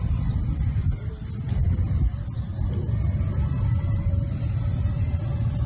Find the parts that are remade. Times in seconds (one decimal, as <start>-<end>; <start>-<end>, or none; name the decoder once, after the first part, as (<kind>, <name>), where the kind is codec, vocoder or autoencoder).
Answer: 0.0-5.7 (vocoder, BigVGAN v2)